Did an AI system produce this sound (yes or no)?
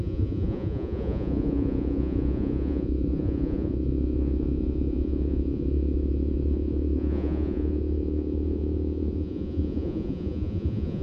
yes